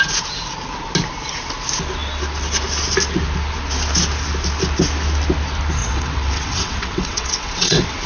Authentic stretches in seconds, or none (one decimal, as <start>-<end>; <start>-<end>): 0.0-5.8